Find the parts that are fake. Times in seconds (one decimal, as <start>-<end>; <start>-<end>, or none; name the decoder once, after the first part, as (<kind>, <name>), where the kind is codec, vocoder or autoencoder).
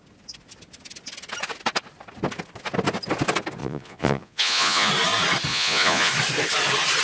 3.6-4.9 (vocoder, Vocos); 5.5-6.1